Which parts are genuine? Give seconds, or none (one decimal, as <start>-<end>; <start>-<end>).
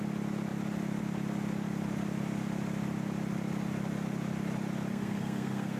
0.0-4.9